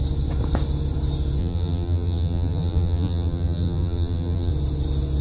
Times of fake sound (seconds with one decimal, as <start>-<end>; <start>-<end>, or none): 1.4-4.5